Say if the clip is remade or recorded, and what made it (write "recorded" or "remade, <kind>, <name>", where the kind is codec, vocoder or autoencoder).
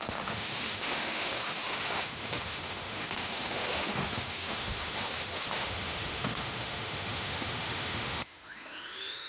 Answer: remade, autoencoder, DAC-VAE